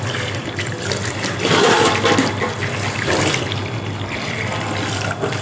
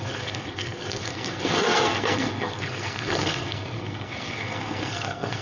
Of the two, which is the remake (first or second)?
second